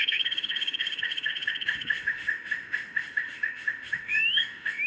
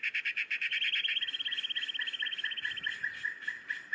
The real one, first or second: second